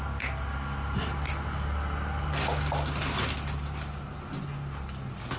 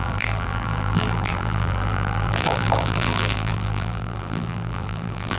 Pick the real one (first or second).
first